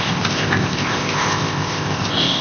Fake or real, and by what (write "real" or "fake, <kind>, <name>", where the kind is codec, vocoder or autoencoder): fake, codec, ZipCodec